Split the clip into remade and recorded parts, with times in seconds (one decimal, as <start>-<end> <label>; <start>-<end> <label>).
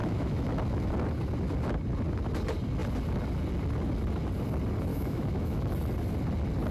0.0-0.9 remade; 0.9-4.9 recorded; 4.9-5.7 remade; 5.7-6.7 recorded